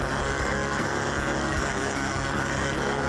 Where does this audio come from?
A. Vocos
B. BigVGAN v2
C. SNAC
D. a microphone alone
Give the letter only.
C